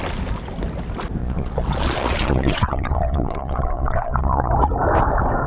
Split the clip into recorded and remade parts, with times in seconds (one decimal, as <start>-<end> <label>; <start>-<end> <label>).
0.0-1.2 recorded; 1.2-4.5 remade; 4.5-5.5 recorded